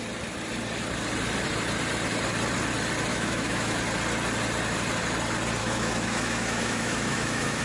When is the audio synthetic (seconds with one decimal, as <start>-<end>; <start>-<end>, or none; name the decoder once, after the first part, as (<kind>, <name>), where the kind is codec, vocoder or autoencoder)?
3.1-3.8 (autoencoder, DAC-VAE); 5.6-7.6